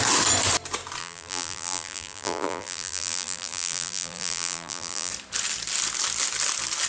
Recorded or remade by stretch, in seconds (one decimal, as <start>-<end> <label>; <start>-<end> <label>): 0.0-1.0 recorded; 1.0-5.1 remade; 5.1-6.9 recorded